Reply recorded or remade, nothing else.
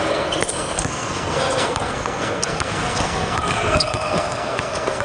remade